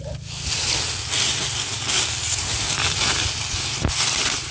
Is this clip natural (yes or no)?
yes